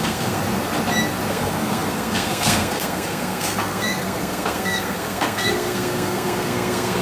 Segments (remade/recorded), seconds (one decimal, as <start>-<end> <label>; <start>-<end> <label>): 0.0-0.4 remade; 0.4-1.3 recorded; 1.3-7.0 remade